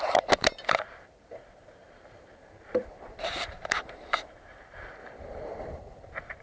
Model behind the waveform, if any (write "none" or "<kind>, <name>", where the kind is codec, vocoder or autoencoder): vocoder, BigVGAN v2